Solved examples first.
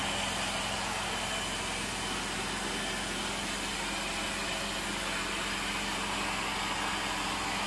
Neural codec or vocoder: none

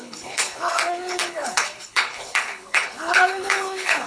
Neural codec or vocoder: codec, HILCodec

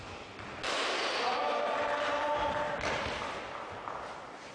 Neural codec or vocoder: none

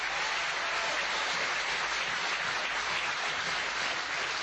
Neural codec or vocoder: none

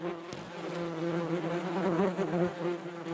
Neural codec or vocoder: none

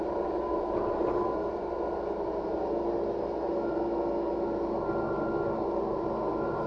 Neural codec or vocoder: none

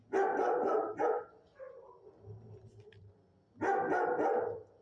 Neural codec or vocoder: none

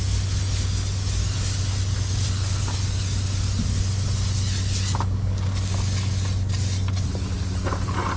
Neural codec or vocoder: none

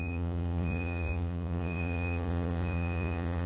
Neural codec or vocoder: vocoder, Vocos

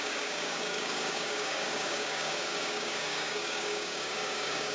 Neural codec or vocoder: codec, DAC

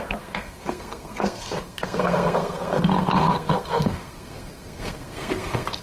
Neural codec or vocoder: codec, SNAC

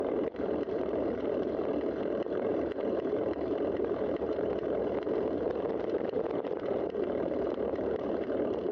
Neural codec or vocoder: vocoder, BigVGAN v2